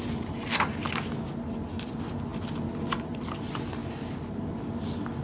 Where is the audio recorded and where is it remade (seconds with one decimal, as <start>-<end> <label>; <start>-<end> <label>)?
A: 0.0-5.2 recorded